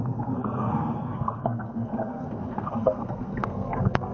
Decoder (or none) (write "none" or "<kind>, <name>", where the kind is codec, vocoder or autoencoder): codec, SNAC